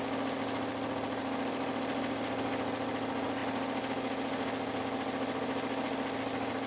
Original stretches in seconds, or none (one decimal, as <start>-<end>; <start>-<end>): 0.0-6.7